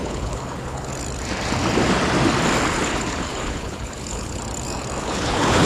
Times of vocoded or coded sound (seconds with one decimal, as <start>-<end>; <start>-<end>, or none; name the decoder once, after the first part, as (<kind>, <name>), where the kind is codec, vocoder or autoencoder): 0.0-0.9 (codec, HILCodec); 2.7-4.4; 5.0-5.7